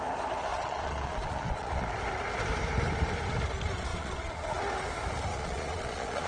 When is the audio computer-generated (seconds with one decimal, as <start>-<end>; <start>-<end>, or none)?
0.5-1.9; 3.9-4.6; 5.3-6.3